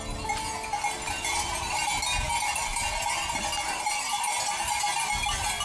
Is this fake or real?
real